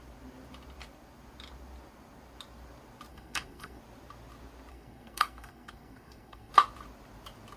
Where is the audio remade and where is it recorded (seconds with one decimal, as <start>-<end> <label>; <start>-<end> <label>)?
0.0-3.1 recorded; 3.1-3.8 remade; 3.8-4.7 recorded; 4.7-6.5 remade; 6.5-7.6 recorded